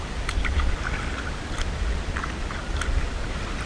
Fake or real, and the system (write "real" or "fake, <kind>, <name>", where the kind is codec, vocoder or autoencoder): real